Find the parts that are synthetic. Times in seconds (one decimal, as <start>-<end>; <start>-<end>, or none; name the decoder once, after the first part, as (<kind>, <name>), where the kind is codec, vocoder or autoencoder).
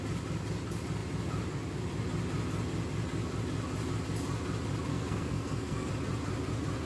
4.9-5.9 (codec, SNAC)